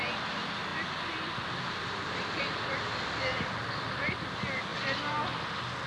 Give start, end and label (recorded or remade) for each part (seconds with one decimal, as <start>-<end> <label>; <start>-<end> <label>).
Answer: 0.0-5.9 recorded